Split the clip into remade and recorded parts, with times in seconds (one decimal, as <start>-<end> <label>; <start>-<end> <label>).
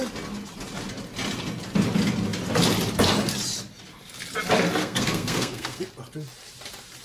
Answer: 0.0-4.8 recorded; 4.8-5.8 remade; 5.8-7.0 recorded